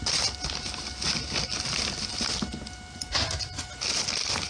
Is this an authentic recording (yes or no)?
yes